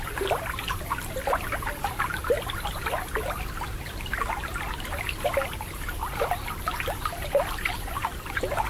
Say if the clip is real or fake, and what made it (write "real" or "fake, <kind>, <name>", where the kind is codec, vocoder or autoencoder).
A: fake, vocoder, BigVGAN v2